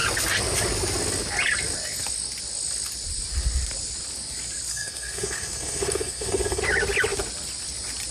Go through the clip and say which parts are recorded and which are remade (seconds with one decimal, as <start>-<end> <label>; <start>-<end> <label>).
0.0-4.7 recorded; 4.7-6.6 remade; 6.6-8.1 recorded